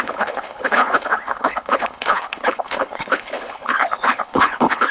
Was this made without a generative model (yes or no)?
no